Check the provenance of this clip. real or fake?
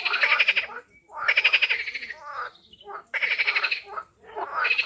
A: real